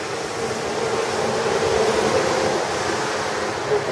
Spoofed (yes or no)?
no